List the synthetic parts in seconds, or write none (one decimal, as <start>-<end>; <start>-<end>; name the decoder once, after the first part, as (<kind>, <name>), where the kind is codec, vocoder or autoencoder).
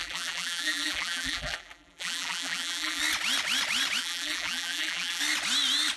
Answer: 0.0-3.0 (vocoder, BigVGAN v2); 4.0-5.2